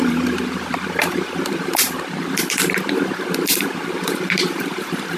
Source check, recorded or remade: remade